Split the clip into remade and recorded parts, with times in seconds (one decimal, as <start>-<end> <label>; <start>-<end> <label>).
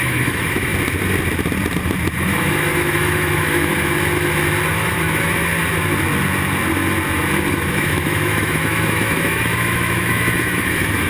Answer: 0.0-0.7 remade; 0.7-2.1 recorded; 2.1-3.7 remade; 3.7-4.7 recorded; 4.7-5.5 remade; 5.5-7.5 recorded; 7.5-11.1 remade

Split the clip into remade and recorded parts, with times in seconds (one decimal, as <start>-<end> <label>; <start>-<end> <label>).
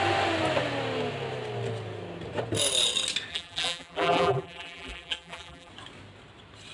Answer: 0.0-3.3 recorded; 3.3-5.7 remade; 5.7-6.7 recorded